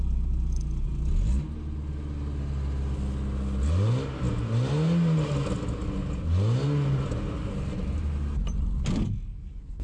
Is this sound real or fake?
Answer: real